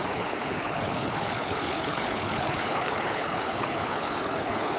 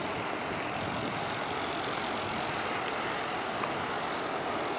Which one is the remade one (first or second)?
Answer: first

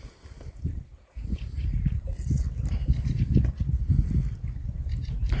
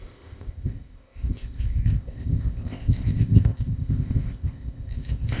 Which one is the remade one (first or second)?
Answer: second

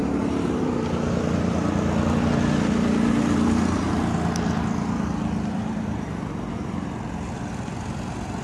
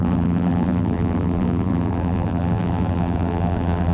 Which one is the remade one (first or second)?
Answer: second